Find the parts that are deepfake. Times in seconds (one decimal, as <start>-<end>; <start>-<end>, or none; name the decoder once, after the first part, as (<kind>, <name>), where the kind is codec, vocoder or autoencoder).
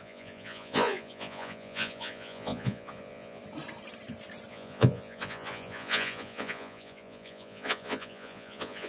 0.0-3.4 (vocoder, Vocos); 4.5-8.9